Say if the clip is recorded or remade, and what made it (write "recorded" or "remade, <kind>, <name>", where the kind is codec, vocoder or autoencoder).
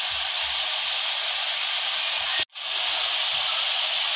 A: recorded